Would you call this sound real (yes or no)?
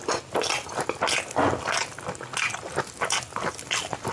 yes